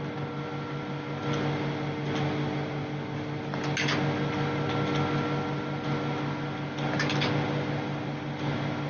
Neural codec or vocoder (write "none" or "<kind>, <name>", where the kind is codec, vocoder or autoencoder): none